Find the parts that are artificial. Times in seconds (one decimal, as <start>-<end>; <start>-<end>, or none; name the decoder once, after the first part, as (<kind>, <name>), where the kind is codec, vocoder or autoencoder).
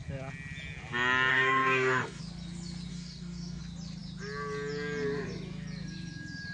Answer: 1.3-2.2 (codec, DAC); 2.9-3.6